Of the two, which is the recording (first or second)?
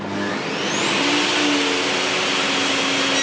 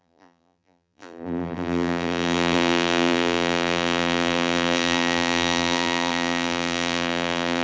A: first